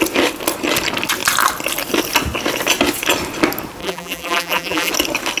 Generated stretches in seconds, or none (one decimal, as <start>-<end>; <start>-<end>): 3.8-4.9